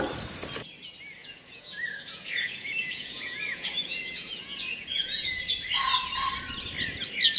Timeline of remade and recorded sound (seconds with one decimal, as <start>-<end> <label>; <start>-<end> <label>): 0.0-1.2 recorded; 1.2-5.4 remade; 5.4-7.4 recorded